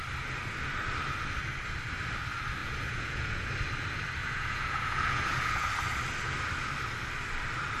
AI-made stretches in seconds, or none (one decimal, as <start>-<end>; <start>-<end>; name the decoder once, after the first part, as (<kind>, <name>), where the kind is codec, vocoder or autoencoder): 2.6-3.5 (vocoder, Vocos); 4.2-5.7